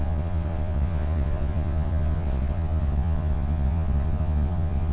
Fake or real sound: fake